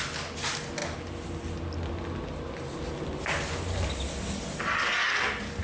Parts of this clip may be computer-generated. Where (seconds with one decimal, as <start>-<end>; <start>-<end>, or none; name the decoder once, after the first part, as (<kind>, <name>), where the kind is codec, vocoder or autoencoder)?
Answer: none